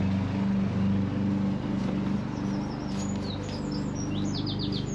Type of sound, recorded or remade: recorded